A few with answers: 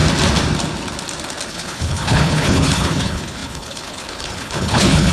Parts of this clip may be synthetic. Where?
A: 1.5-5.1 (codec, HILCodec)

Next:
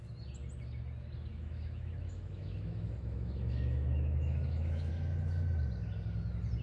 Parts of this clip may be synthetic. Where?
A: 1.3-4.9 (autoencoder, DAC-VAE)

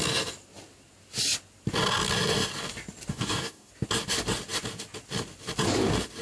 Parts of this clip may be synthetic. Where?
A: 3.1-3.7 (codec, DAC)